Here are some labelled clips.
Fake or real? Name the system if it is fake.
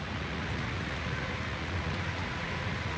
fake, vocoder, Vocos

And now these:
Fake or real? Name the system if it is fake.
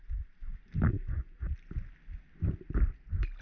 real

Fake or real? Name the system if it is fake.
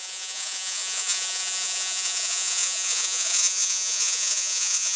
fake, vocoder, Vocos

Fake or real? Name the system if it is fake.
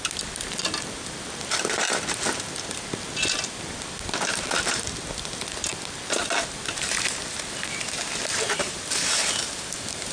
real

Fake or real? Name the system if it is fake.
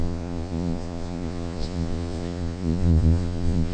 fake, vocoder, Vocos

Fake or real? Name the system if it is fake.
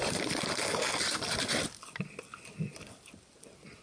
real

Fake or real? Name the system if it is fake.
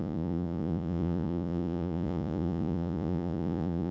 fake, vocoder, Vocos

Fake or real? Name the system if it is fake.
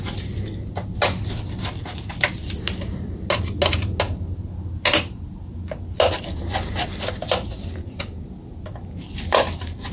real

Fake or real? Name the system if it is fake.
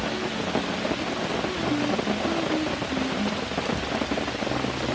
real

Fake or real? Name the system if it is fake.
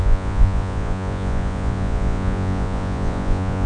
fake, vocoder, Vocos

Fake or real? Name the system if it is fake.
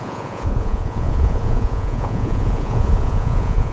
fake, vocoder, Vocos